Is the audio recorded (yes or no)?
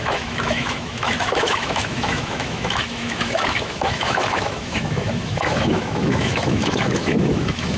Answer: no